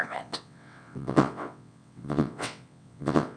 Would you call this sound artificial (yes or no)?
yes